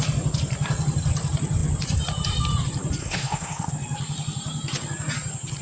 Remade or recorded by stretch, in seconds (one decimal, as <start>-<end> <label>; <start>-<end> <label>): 0.0-3.0 recorded; 3.0-3.7 remade; 3.7-5.6 recorded